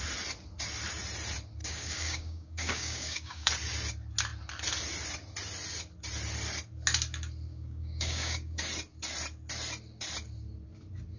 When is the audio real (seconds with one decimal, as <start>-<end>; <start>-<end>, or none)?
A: 0.0-1.6; 3.5-7.5; 8.6-11.2